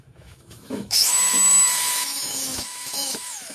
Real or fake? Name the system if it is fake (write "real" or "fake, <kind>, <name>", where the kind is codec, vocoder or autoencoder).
fake, autoencoder, DAC-VAE